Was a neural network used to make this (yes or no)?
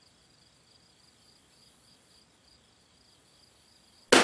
no